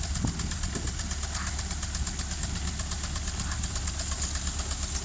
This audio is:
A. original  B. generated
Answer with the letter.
A